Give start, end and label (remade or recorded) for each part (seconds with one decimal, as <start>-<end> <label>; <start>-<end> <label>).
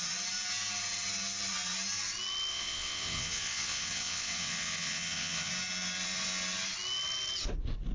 0.0-2.5 recorded; 2.5-5.5 remade; 5.5-7.9 recorded